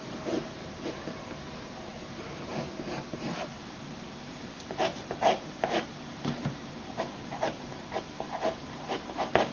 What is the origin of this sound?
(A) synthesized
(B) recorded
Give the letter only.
A